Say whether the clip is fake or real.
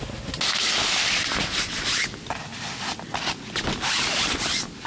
real